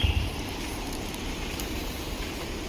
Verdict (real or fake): fake